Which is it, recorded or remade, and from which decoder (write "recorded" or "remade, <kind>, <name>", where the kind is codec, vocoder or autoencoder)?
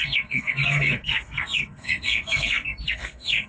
remade, codec, SNAC